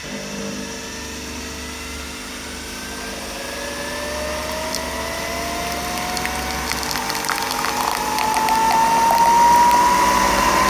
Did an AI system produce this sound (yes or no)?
no